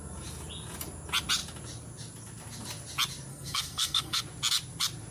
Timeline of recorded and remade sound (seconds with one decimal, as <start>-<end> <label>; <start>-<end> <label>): 0.0-3.3 recorded; 3.3-4.2 remade; 4.2-5.1 recorded